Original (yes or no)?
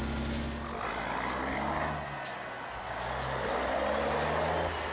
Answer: yes